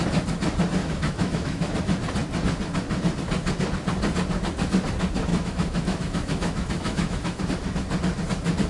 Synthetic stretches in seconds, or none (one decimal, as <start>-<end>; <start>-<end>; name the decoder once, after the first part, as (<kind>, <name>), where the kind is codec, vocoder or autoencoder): 0.8-1.7 (autoencoder, DAC-VAE); 5.3-7.4